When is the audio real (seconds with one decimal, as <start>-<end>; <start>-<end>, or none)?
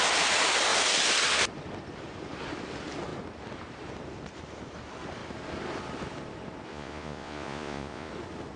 0.0-6.7; 8.1-8.6